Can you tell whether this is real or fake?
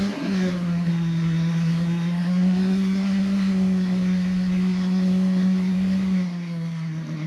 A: fake